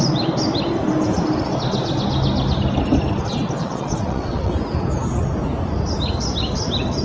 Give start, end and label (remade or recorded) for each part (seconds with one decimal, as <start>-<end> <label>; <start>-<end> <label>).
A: 0.0-3.6 recorded; 3.6-4.5 remade; 4.5-7.0 recorded